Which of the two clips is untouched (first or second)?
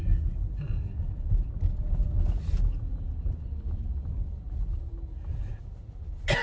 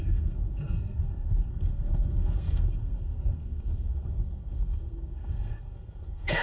first